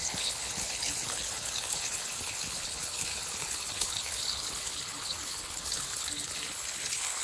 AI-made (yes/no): yes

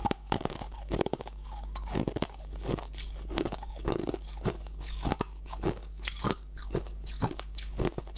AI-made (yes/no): yes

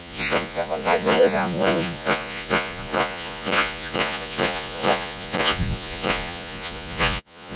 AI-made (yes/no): yes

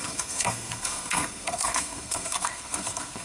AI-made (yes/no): yes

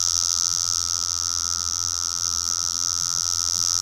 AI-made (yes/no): yes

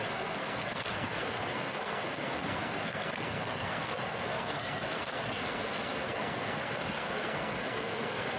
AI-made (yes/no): yes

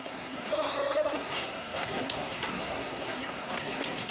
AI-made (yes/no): yes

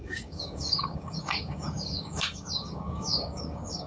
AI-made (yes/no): yes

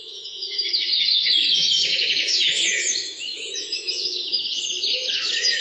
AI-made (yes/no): yes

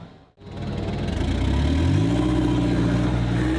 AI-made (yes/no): no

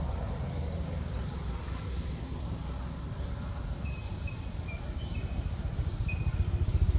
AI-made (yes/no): no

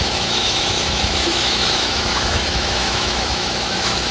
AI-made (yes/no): yes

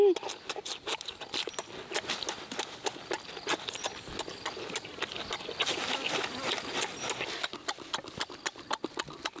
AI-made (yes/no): no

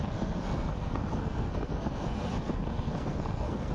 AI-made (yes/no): yes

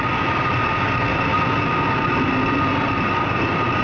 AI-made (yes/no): no